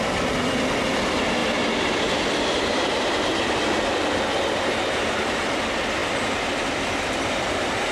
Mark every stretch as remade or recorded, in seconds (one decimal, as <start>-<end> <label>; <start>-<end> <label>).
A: 0.0-1.4 recorded; 1.4-5.4 remade; 5.4-6.0 recorded; 6.0-7.9 remade